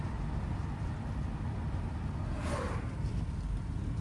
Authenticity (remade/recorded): recorded